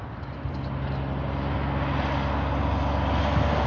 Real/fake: real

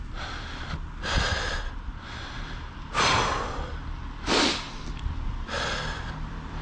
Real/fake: real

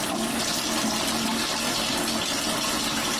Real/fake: real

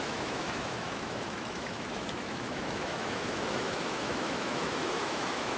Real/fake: fake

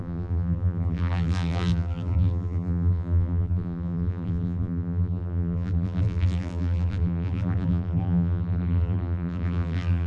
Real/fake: fake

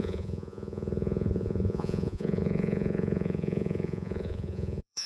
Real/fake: fake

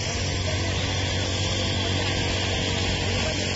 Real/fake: real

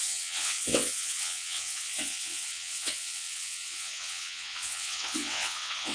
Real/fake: fake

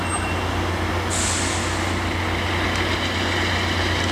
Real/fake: real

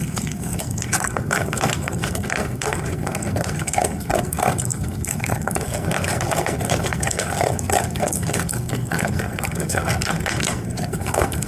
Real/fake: fake